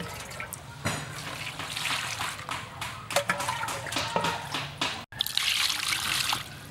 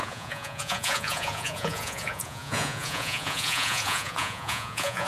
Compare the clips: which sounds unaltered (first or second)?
first